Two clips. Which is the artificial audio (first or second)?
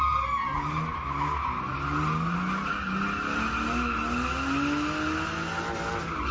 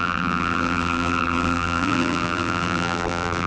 second